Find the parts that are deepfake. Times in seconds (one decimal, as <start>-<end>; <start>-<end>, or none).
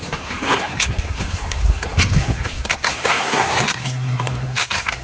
0.0-5.0